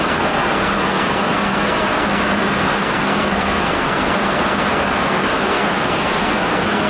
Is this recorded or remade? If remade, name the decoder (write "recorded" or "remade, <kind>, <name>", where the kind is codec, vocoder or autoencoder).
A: remade, codec, SNAC